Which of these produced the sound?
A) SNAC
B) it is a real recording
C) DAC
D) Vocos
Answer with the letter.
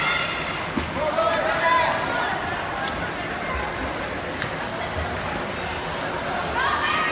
B